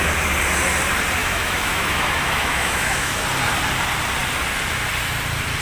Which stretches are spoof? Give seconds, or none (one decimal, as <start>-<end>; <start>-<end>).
1.2-3.2